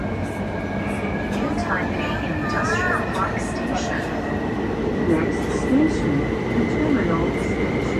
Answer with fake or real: real